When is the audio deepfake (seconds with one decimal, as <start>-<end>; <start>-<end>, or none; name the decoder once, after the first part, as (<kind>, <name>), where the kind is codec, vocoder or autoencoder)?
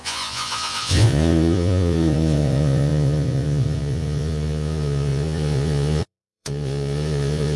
0.0-7.6 (vocoder, Vocos)